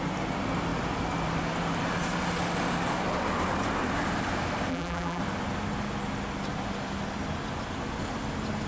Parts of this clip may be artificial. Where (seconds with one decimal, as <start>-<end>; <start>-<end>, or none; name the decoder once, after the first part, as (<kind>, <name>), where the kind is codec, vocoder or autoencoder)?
4.7-5.2 (vocoder, BigVGAN v2)